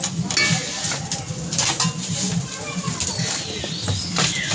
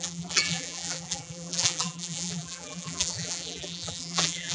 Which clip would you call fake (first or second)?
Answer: second